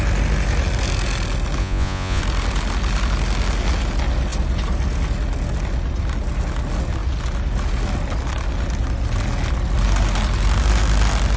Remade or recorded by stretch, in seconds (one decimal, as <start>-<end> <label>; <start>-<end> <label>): 0.0-1.6 recorded; 1.6-2.2 remade; 2.2-11.4 recorded